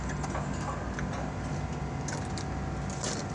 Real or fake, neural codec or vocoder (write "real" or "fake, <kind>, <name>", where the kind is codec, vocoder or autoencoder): real